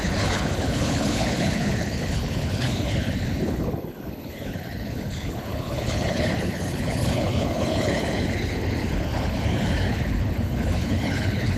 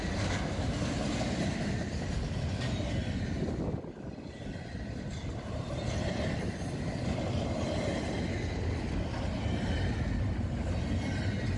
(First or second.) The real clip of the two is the second